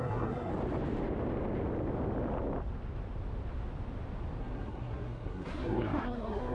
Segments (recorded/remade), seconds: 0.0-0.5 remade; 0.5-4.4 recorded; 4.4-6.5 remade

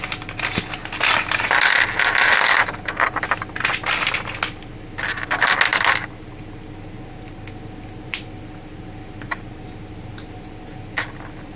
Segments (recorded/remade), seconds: 0.0-11.6 recorded

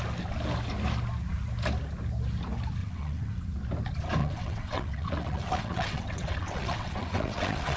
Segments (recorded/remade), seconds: 0.0-2.8 recorded; 2.8-3.3 remade; 3.3-4.2 recorded; 4.2-7.8 remade